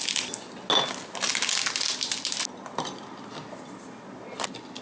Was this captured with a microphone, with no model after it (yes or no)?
yes